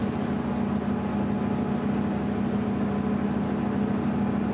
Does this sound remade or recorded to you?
recorded